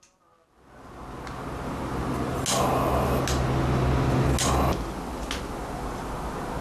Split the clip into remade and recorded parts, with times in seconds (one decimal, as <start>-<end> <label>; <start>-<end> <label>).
0.0-6.6 recorded